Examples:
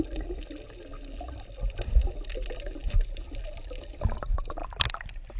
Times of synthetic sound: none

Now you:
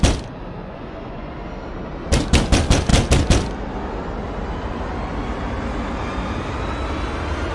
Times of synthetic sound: 0.6-1.3 (vocoder, Vocos)

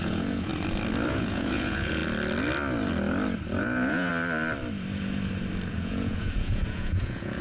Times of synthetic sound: 0.0-0.5 (vocoder, Vocos); 1.1-2.0; 3.6-4.1; 5.7-7.4

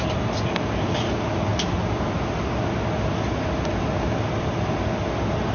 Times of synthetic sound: none